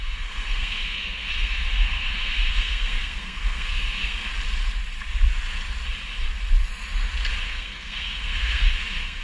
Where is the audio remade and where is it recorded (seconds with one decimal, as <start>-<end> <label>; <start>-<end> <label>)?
0.0-4.3 remade; 4.3-7.4 recorded; 7.4-9.2 remade